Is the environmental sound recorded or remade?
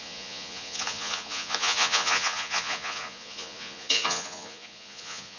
remade